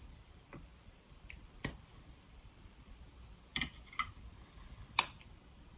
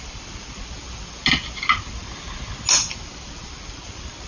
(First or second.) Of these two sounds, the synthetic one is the first